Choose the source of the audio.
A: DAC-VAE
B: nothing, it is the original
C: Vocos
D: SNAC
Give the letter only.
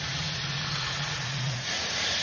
C